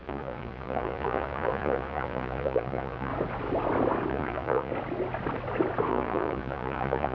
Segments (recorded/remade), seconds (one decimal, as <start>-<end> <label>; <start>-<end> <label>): 0.0-3.1 remade; 3.1-4.1 recorded; 4.1-4.7 remade; 4.7-5.9 recorded; 5.9-7.1 remade

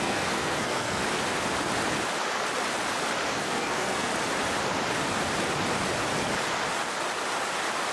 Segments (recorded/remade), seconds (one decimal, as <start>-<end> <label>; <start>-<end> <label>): 0.0-1.0 remade; 1.0-3.3 recorded; 3.3-4.1 remade; 4.1-7.9 recorded

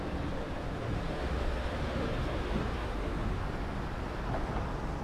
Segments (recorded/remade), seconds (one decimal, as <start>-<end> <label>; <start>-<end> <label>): 0.0-0.4 recorded; 0.4-3.4 remade; 3.4-5.0 recorded

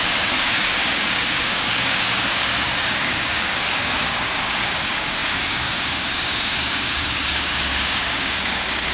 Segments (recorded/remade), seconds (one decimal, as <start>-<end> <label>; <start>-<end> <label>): 0.0-8.9 remade